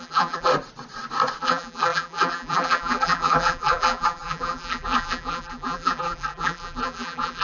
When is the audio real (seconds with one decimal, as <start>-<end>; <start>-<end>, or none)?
0.5-1.4